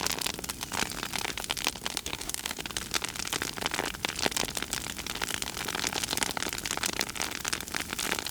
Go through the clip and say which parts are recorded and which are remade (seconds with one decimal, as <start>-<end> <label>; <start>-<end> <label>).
0.0-2.0 recorded; 2.0-2.6 remade; 2.6-8.3 recorded